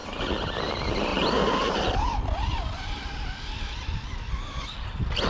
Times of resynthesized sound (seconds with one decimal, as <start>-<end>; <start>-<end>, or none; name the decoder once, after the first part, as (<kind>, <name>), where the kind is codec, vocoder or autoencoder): none

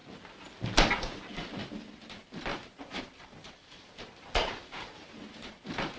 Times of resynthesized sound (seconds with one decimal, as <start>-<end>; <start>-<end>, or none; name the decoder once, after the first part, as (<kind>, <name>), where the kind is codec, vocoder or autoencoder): 2.5-6.0 (vocoder, BigVGAN v2)

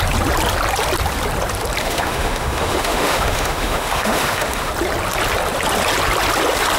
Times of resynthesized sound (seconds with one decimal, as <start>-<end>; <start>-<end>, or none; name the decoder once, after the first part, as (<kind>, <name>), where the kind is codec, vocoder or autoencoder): 1.8-4.7 (autoencoder, DAC-VAE)

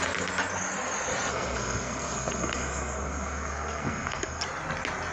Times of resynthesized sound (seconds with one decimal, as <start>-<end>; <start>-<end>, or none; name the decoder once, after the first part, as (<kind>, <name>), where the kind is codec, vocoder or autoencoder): 1.3-4.4 (codec, SNAC)

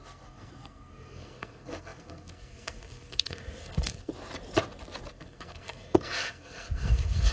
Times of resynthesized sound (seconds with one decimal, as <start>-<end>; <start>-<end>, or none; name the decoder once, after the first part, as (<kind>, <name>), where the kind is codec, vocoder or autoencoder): 0.0-4.1 (codec, SNAC); 5.1-7.3